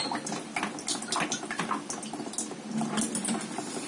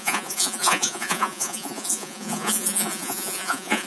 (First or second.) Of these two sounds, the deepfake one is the second